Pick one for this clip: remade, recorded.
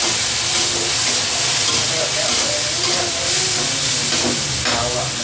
recorded